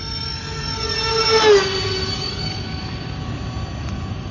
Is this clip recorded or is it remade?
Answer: recorded